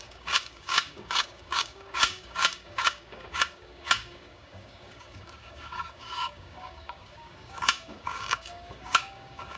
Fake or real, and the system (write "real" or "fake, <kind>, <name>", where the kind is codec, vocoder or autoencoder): fake, codec, DAC